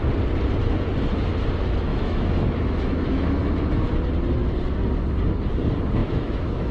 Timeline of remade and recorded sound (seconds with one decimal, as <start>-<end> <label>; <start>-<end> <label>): 0.0-1.9 recorded; 1.9-3.4 remade; 3.4-6.0 recorded; 6.0-6.7 remade